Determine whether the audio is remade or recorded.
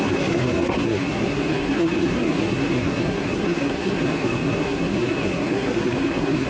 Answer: remade